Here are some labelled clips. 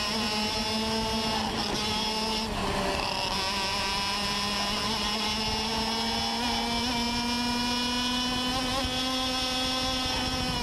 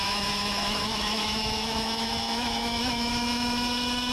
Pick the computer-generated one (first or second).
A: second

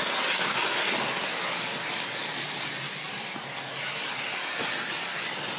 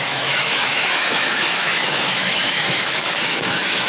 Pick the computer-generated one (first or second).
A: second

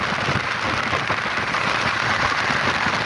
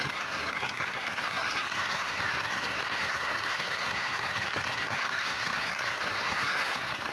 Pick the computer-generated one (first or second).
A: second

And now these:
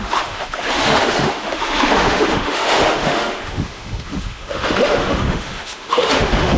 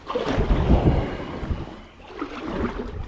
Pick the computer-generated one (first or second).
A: first